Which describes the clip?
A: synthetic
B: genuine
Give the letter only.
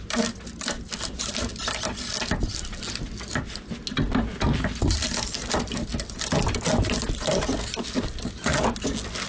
B